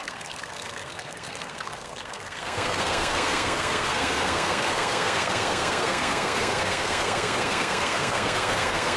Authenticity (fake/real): fake